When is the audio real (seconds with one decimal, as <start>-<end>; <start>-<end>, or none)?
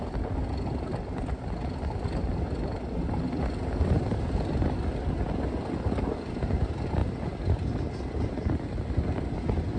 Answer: 0.0-9.8